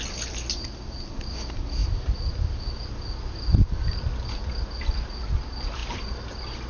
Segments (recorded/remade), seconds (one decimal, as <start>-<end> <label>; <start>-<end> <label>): 0.0-6.7 recorded